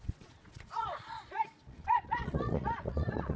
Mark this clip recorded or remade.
remade